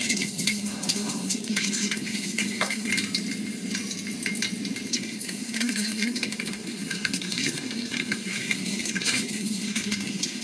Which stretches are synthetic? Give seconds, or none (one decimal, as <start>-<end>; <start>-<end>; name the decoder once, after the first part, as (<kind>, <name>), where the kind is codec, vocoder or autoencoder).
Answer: 0.0-2.9 (codec, SNAC); 4.9-10.4